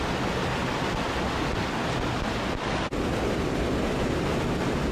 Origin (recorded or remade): recorded